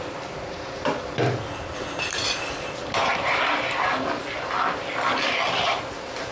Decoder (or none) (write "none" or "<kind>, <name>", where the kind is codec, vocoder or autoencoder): none